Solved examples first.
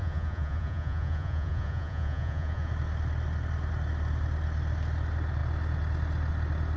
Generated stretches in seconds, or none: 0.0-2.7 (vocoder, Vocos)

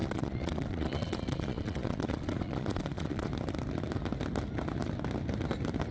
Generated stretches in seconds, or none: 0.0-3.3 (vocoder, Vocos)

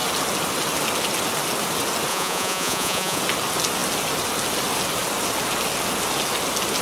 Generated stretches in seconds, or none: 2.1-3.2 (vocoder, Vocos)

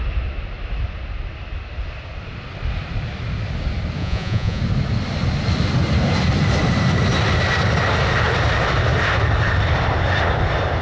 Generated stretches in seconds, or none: 4.0-4.6 (vocoder, Vocos)